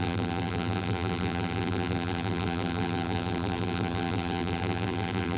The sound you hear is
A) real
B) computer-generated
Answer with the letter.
B